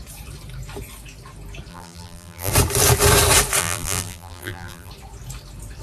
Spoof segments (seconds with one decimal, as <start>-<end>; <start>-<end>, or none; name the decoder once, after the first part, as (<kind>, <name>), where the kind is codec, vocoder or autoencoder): 1.7-2.5 (vocoder, BigVGAN v2); 3.6-4.9